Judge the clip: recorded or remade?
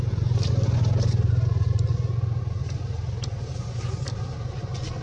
recorded